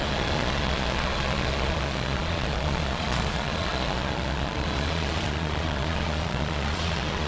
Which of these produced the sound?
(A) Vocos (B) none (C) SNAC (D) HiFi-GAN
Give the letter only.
A